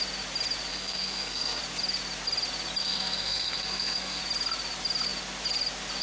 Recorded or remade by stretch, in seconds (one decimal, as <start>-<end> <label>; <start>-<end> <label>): 0.0-0.7 recorded; 0.7-1.6 remade; 1.6-2.8 recorded; 2.8-4.2 remade; 4.2-6.0 recorded